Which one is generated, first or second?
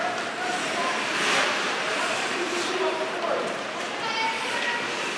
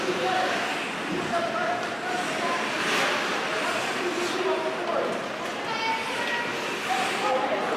first